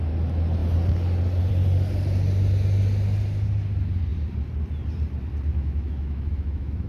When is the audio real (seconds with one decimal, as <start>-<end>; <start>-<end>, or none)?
0.0-5.5